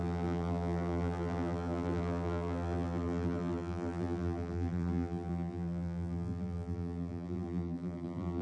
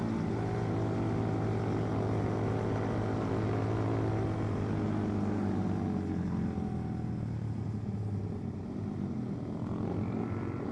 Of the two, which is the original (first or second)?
second